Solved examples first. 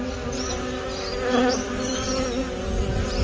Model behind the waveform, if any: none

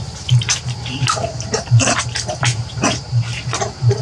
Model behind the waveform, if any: vocoder, BigVGAN v2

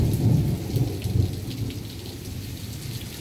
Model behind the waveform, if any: none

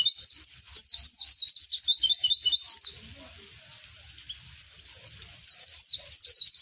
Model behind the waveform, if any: none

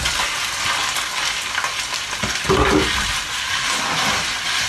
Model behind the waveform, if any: none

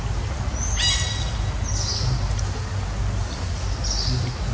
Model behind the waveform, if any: none